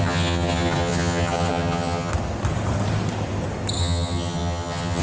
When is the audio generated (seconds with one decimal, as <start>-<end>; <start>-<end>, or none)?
0.0-2.1; 3.8-5.0